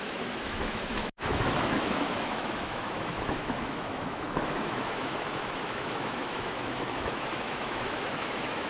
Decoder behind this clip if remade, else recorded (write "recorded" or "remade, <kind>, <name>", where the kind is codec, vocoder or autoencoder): remade, autoencoder, DAC-VAE